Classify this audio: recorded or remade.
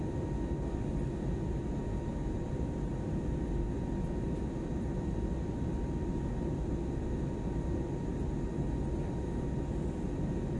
recorded